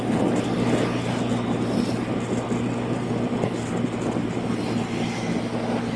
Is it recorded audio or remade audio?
recorded